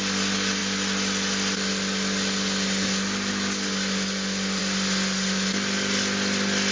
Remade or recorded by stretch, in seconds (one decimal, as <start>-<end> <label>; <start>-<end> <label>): 0.0-6.7 recorded